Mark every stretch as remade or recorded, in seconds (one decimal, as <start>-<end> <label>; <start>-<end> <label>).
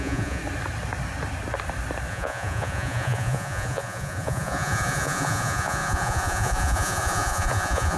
0.0-0.4 remade; 0.4-2.1 recorded; 2.1-8.0 remade